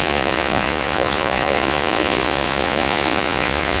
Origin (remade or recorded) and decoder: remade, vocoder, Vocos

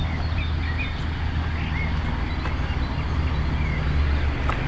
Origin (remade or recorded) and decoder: recorded